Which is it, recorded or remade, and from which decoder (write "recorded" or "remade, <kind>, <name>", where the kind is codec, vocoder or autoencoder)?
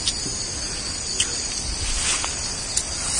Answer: recorded